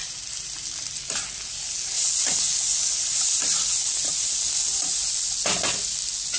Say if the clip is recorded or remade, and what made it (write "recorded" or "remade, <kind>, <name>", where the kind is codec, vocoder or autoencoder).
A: recorded